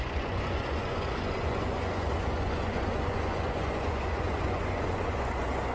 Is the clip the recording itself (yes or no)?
no